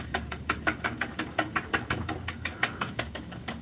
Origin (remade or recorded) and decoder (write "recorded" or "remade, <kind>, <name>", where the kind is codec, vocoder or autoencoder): remade, codec, DAC